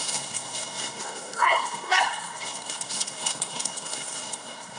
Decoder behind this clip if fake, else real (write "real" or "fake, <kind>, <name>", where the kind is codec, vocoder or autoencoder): fake, codec, SNAC